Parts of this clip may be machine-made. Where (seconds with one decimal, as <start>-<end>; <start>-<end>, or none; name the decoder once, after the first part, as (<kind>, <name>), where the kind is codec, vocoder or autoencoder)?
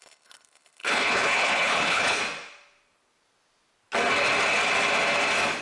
0.0-2.2 (codec, HILCodec)